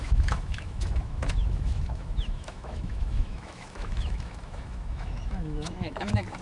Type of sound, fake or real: fake